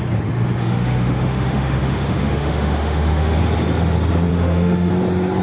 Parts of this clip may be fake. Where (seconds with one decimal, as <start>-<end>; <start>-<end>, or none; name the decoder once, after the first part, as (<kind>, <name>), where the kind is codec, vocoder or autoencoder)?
0.6-3.4 (autoencoder, DAC-VAE); 4.3-4.9